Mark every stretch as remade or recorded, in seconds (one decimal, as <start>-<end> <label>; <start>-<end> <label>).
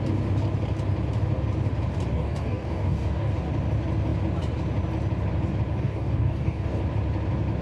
0.0-2.1 recorded; 2.1-3.3 remade; 3.3-5.7 recorded; 5.7-6.8 remade; 6.8-7.6 recorded